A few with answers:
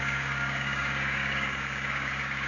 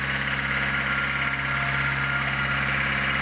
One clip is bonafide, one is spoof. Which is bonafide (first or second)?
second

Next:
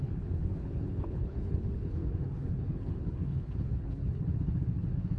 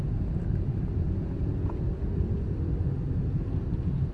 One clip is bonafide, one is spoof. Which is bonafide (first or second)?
second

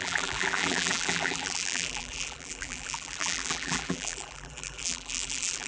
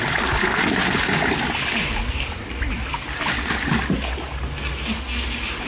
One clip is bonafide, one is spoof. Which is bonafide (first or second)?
second